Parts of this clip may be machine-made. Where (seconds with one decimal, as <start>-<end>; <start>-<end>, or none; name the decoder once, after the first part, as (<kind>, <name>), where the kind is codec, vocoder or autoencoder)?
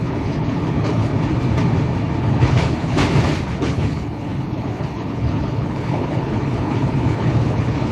0.0-1.1 (codec, HILCodec); 2.2-3.0; 3.6-7.9